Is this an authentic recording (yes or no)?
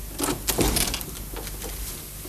yes